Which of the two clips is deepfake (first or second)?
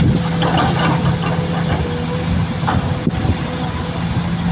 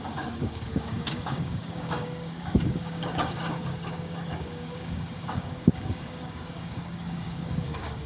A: second